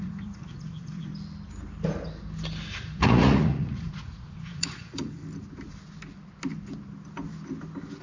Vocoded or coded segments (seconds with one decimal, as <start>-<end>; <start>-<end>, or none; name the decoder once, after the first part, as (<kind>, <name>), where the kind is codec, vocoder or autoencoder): 0.0-1.1 (vocoder, Vocos); 2.8-5.2